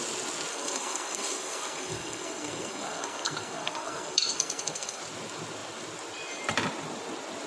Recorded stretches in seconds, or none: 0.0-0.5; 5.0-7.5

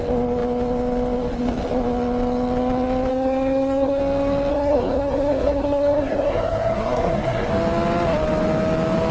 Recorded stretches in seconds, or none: 0.0-3.1; 4.0-4.5; 7.5-9.1

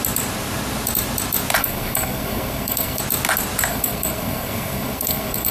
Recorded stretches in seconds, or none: 0.0-1.6; 3.0-3.7

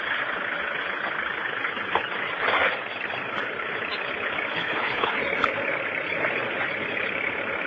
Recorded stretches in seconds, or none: 0.0-4.5; 5.2-7.7

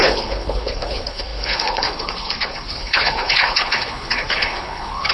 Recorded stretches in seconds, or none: none

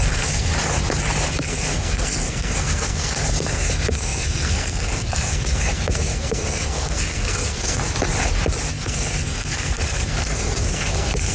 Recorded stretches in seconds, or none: 0.5-1.3; 7.8-8.7